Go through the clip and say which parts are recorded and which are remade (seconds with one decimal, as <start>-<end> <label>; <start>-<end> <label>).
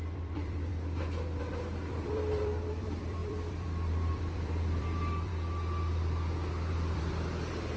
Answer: 0.0-0.7 remade; 0.7-1.4 recorded; 1.4-5.3 remade; 5.3-6.7 recorded; 6.7-7.8 remade